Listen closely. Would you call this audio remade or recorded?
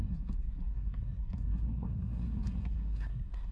remade